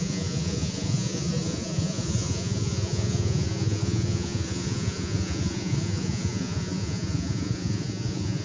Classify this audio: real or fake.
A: fake